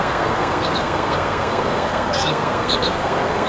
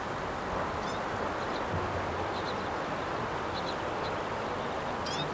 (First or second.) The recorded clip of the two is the second